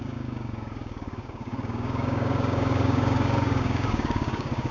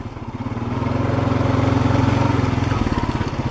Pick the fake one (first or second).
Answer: first